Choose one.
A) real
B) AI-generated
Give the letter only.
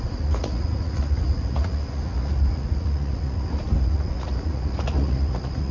B